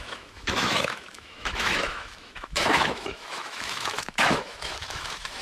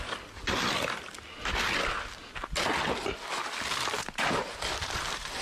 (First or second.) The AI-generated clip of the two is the first